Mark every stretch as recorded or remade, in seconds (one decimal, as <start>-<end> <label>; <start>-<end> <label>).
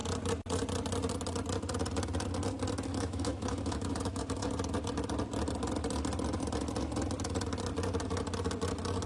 0.0-2.9 recorded; 2.9-4.5 remade; 4.5-9.1 recorded